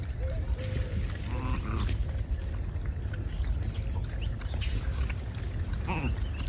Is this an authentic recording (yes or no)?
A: yes